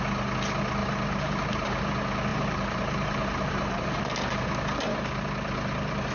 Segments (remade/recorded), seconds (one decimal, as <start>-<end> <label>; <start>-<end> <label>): 0.0-0.8 recorded; 0.8-1.8 remade; 1.8-2.3 recorded; 2.3-4.0 remade; 4.0-6.1 recorded